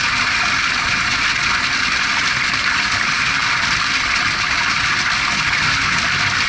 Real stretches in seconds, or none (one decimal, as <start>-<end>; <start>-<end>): 0.0-6.5